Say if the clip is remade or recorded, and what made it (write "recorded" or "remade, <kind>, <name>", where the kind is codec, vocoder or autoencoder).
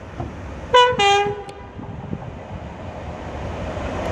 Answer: recorded